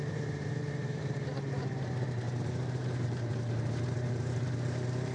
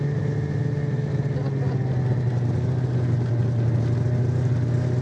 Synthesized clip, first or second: first